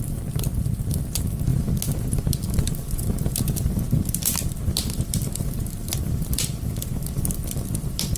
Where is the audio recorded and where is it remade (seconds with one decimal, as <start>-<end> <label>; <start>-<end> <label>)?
0.0-8.2 remade